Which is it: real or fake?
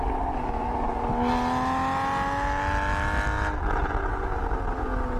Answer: real